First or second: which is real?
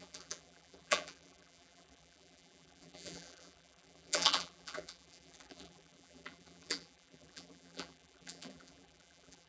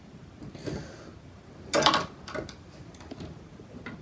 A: second